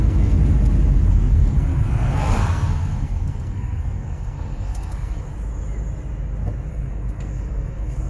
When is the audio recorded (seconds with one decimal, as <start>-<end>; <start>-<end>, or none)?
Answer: 0.4-1.1; 5.3-6.7